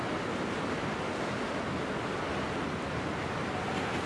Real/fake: real